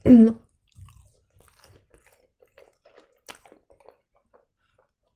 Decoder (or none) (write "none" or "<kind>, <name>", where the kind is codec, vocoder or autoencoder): none